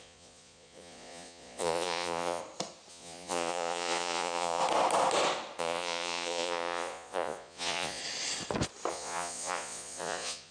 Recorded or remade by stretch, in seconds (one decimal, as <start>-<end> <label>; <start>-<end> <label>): 0.0-2.4 remade; 2.4-2.9 recorded; 2.9-4.6 remade; 4.6-5.6 recorded; 5.6-8.0 remade; 8.0-8.9 recorded; 8.9-10.5 remade